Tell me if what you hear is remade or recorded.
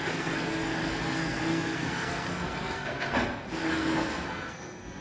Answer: remade